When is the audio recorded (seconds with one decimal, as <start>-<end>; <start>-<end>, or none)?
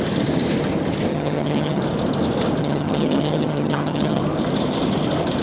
0.0-1.1; 1.8-2.6; 4.2-5.4